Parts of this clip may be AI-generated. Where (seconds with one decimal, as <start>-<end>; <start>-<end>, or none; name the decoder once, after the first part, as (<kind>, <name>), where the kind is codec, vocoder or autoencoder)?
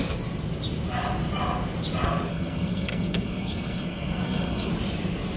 2.3-4.7 (codec, SNAC)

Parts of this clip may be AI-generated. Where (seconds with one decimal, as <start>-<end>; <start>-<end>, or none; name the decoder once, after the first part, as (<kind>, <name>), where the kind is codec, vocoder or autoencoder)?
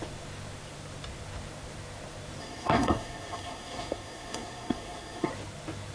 2.4-5.3 (codec, SNAC)